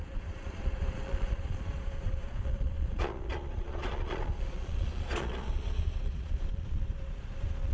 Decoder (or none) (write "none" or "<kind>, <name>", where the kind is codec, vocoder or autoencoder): vocoder, Vocos